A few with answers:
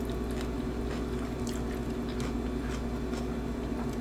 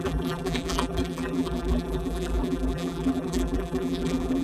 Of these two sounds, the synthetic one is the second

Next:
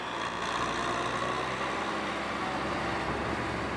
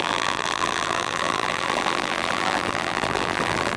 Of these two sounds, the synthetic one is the second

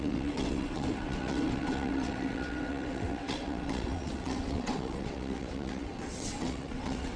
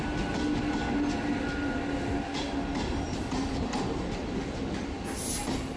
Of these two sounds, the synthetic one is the first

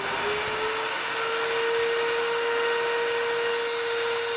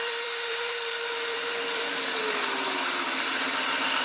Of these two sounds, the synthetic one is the second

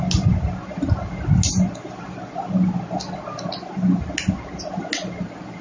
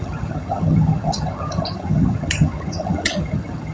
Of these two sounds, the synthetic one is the second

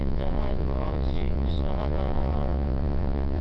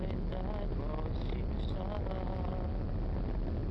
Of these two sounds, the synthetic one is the first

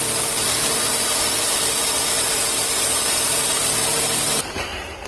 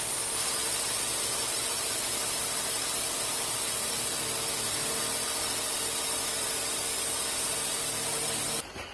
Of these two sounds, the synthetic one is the first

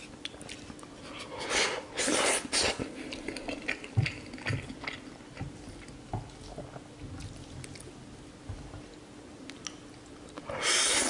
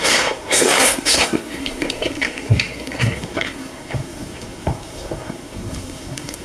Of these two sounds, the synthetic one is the second